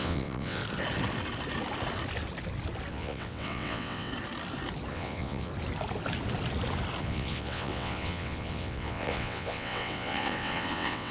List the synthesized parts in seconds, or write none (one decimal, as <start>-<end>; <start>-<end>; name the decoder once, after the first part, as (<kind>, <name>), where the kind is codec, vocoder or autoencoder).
0.0-0.6 (vocoder, WaveNeXt); 2.9-4.1; 4.9-5.5; 7.0-11.1